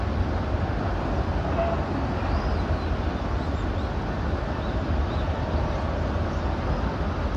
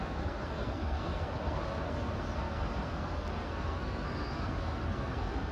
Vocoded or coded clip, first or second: second